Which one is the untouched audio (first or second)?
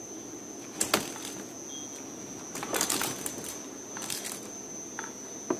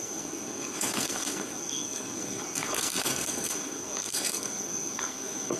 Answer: first